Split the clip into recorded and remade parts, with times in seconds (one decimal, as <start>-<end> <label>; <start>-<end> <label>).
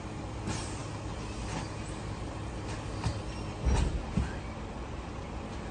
0.0-5.7 recorded